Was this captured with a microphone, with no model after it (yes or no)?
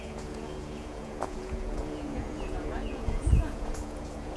no